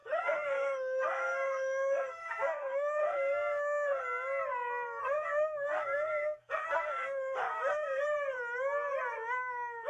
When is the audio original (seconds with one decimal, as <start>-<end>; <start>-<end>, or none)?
4.0-5.0; 8.0-9.9